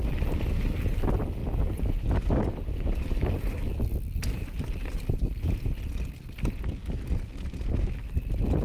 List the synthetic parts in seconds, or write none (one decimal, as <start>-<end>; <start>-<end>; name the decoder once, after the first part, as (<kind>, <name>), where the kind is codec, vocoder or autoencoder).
none

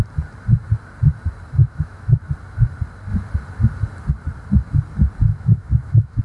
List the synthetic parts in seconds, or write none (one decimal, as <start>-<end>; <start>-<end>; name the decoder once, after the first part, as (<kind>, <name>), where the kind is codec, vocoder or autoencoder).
1.6-2.2 (autoencoder, DAC-VAE); 5.3-6.2

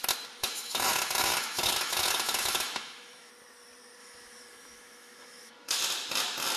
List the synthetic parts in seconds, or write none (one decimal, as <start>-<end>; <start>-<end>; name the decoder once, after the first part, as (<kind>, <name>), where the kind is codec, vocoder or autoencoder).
0.4-3.3 (autoencoder, DAC-VAE); 4.0-5.8

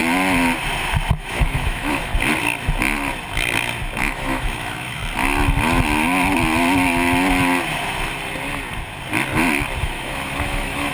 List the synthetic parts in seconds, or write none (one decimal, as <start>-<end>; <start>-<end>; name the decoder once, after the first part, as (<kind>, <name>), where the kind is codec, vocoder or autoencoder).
1.2-2.1 (autoencoder, DAC-VAE); 4.0-5.0; 9.8-10.9

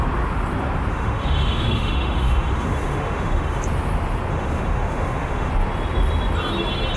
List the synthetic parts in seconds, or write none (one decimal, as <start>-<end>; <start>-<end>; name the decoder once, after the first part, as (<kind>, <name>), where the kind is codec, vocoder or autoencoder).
0.9-3.6 (autoencoder, DAC-VAE); 4.3-5.5